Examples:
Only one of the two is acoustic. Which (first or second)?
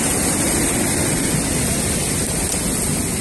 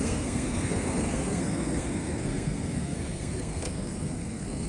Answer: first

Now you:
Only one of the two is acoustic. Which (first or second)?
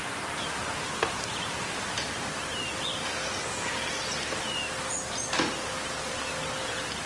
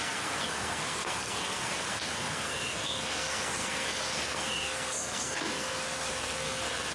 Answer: first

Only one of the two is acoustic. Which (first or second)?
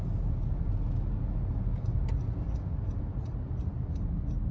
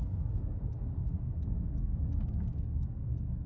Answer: first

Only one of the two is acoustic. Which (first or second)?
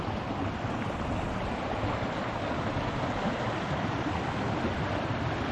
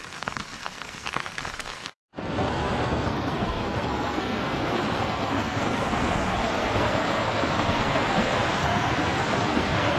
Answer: first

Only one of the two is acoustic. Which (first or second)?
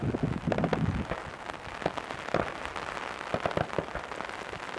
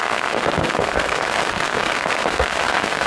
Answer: first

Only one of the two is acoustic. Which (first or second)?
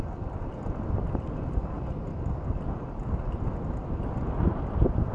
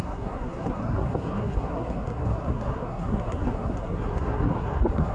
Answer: first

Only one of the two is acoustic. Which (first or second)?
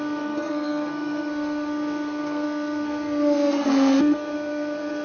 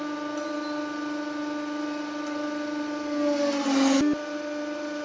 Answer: second